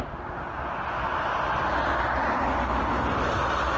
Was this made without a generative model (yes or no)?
yes